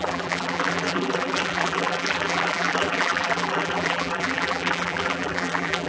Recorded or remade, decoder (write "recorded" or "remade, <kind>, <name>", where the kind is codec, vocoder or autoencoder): remade, vocoder, BigVGAN v2